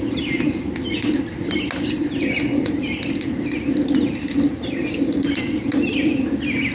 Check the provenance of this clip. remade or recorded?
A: recorded